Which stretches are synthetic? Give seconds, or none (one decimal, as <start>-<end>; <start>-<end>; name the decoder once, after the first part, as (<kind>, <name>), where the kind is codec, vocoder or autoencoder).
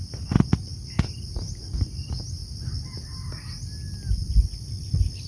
none